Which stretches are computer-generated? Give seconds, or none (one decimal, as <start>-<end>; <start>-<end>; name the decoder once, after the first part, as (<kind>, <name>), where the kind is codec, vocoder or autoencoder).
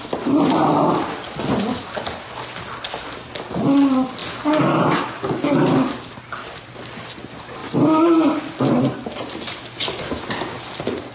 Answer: none